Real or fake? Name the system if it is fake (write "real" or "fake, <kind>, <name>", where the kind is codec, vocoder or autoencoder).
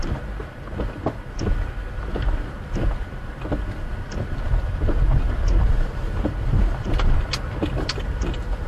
fake, vocoder, BigVGAN v2